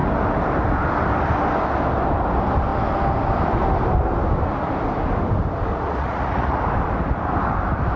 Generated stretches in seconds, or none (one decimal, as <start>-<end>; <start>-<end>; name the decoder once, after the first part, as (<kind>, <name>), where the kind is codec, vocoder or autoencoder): 5.7-6.6 (vocoder, Vocos)